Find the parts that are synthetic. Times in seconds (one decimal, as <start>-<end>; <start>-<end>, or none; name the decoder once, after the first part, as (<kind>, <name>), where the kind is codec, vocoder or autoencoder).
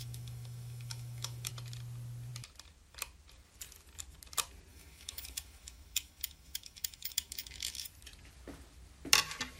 0.0-1.5 (autoencoder, DAC-VAE); 4.7-7.9